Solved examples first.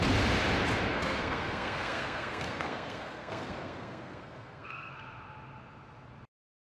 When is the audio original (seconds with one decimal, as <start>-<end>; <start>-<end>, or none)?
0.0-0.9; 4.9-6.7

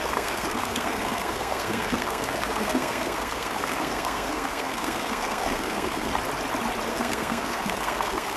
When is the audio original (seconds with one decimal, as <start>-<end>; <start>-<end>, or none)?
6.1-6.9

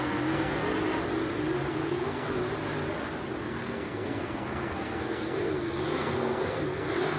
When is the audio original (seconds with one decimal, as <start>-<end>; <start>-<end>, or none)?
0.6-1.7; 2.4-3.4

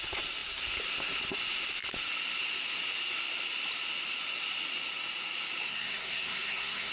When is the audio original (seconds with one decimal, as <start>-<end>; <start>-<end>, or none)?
0.0-5.7

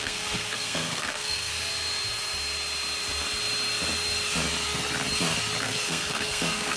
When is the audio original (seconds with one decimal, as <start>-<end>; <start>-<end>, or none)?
1.5-5.6

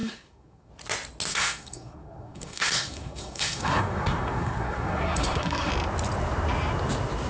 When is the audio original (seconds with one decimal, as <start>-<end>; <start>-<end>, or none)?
0.7-1.3; 5.7-7.3